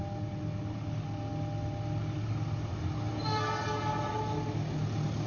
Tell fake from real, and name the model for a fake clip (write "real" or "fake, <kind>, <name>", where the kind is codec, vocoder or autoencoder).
real